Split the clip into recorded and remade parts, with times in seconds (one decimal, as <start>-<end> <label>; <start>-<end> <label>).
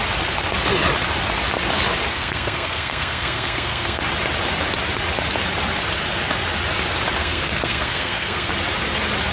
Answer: 0.0-2.1 recorded; 2.1-4.0 remade; 4.0-7.2 recorded; 7.2-8.5 remade; 8.5-9.3 recorded